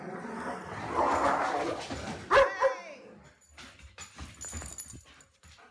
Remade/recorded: recorded